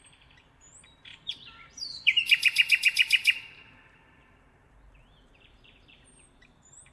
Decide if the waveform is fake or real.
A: fake